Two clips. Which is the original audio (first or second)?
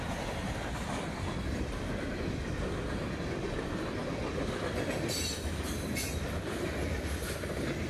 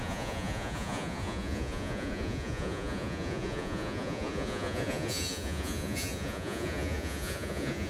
first